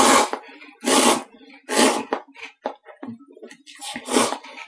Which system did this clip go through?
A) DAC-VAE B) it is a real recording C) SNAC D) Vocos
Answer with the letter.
B